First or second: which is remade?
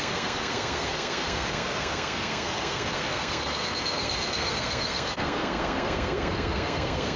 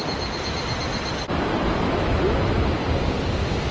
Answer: first